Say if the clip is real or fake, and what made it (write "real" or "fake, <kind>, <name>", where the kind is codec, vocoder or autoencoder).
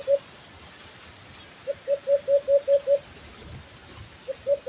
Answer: real